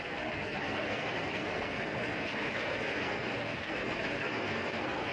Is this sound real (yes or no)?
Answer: no